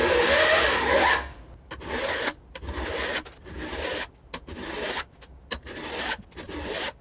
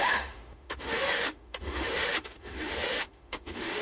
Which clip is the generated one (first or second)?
second